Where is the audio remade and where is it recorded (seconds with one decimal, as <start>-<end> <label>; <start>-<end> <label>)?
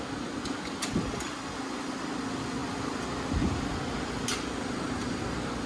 0.0-5.7 recorded